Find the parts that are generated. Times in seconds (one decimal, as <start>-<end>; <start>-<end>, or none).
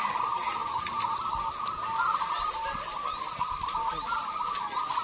none